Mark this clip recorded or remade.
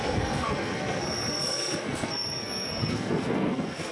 remade